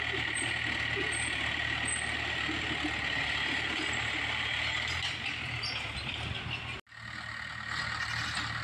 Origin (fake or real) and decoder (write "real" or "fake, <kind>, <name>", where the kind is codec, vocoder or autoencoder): real